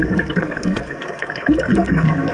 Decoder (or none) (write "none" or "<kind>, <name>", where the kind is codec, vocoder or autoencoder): codec, SNAC